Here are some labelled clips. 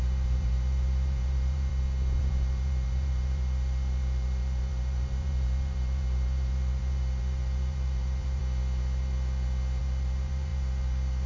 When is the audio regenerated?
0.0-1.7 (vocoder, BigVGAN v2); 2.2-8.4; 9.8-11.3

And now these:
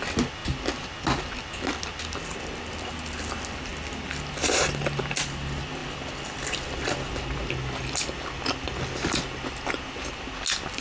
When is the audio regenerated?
5.8-7.5 (vocoder, BigVGAN v2)